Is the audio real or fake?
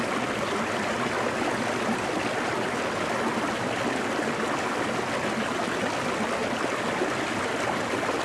real